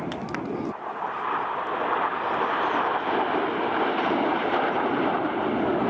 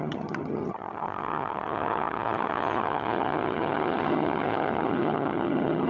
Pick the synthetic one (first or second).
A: second